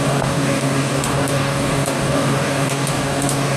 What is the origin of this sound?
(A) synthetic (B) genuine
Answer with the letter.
A